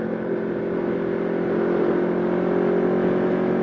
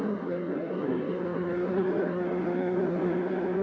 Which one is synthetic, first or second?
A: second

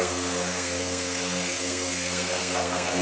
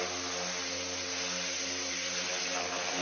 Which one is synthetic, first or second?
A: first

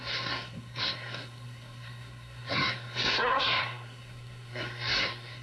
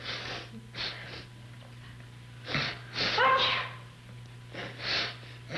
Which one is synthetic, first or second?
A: first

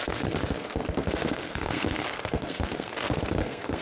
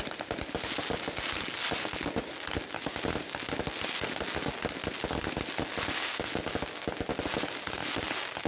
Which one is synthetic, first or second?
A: first